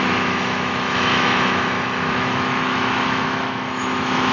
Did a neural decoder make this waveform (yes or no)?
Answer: yes